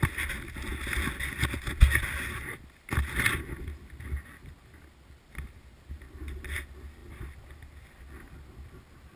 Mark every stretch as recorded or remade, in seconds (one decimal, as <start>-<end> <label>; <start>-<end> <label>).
0.0-9.2 recorded